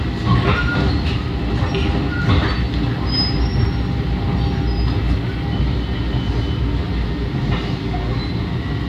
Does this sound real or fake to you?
real